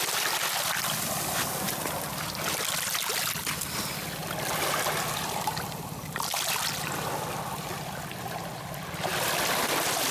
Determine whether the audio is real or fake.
real